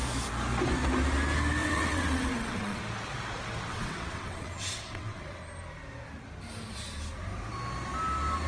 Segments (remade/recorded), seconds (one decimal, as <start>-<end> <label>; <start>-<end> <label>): 0.0-1.6 recorded; 1.6-2.8 remade; 2.8-3.7 recorded; 3.7-5.4 remade; 5.4-8.5 recorded